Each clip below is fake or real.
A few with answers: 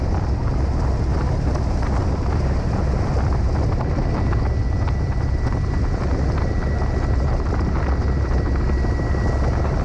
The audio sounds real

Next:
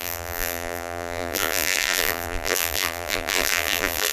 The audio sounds fake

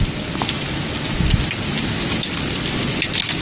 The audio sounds real